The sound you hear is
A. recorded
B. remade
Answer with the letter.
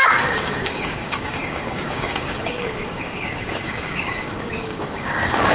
B